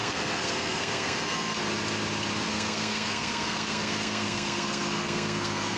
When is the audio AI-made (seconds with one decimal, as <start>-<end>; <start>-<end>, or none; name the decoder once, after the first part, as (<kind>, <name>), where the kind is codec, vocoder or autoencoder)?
0.0-1.6 (codec, SNAC); 2.5-5.8